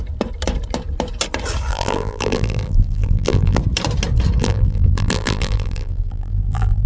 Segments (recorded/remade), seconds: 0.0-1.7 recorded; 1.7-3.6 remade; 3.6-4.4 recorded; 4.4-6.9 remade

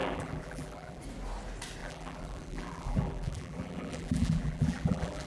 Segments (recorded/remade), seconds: 0.0-1.0 remade; 1.0-1.8 recorded; 1.8-5.3 remade

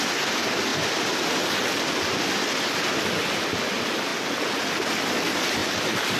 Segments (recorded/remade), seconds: 0.0-4.1 recorded; 4.1-4.7 remade; 4.7-6.2 recorded

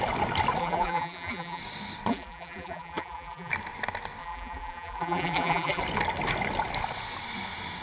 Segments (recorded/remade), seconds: 0.0-0.6 recorded; 0.6-1.6 remade; 1.6-2.1 recorded; 2.1-3.5 remade; 3.5-4.2 recorded; 4.2-5.8 remade; 5.8-7.8 recorded

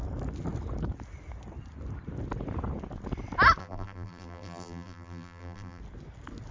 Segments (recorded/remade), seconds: 0.0-3.6 recorded; 3.6-5.8 remade; 5.8-6.5 recorded